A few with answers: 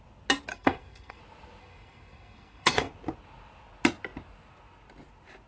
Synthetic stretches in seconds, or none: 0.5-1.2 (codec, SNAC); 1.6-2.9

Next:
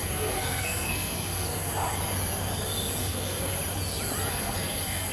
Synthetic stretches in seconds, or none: 0.0-1.7 (codec, SNAC); 3.0-3.6; 4.3-5.1

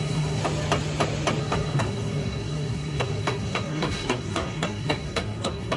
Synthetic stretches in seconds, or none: 0.0-0.4 (codec, SNAC); 1.4-5.8

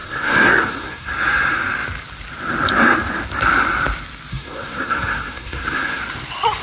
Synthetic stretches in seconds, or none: 0.0-1.1 (codec, SNAC); 4.3-6.0